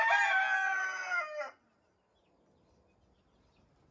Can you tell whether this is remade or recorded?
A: recorded